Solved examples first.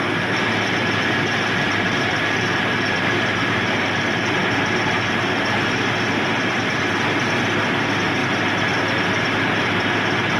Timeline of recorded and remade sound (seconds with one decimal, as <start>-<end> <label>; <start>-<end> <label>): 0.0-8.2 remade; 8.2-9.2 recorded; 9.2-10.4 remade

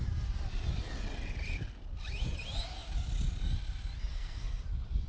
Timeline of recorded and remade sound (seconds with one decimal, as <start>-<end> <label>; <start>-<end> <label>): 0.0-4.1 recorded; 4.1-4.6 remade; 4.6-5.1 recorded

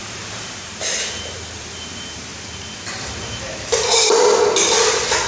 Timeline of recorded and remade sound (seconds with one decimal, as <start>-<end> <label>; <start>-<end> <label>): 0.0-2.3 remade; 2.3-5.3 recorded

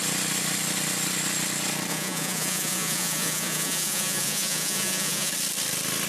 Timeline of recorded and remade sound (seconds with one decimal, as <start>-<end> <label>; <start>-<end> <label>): 0.0-1.9 recorded; 1.9-5.3 remade; 5.3-6.1 recorded

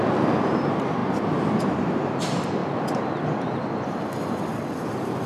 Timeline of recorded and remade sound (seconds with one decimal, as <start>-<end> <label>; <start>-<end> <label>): 0.0-5.3 recorded

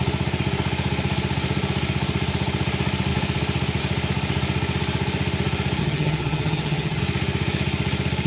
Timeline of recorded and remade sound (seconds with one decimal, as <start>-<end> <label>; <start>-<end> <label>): 0.0-5.8 recorded; 5.8-7.0 remade; 7.0-8.3 recorded

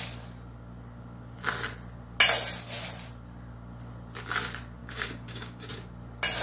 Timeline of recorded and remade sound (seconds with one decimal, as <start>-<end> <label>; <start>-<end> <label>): 0.0-4.8 recorded; 4.8-5.7 remade; 5.7-6.4 recorded